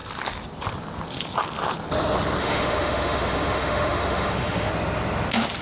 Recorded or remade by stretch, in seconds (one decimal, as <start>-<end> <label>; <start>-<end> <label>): 0.0-2.4 recorded; 2.4-4.7 remade; 4.7-5.6 recorded